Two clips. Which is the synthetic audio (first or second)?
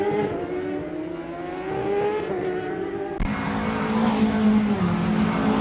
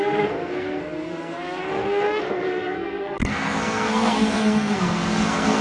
second